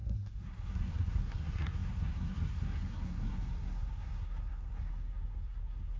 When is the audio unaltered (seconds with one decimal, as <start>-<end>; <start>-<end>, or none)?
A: none